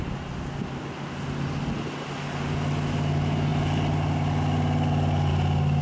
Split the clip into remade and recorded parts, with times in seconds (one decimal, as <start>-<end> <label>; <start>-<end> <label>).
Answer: 0.0-5.8 recorded

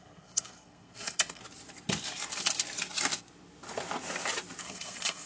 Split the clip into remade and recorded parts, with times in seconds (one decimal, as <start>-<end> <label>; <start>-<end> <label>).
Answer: 0.0-1.4 remade; 1.4-4.6 recorded; 4.6-5.3 remade

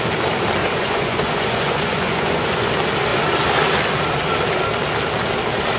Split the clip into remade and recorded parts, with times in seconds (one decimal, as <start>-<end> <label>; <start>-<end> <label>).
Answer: 0.0-0.6 recorded; 0.6-2.7 remade; 2.7-5.8 recorded

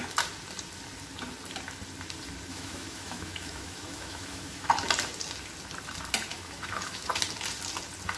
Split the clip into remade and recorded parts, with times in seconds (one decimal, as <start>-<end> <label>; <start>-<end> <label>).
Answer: 0.0-2.5 recorded; 2.5-4.7 remade; 4.7-6.3 recorded; 6.3-7.1 remade; 7.1-8.2 recorded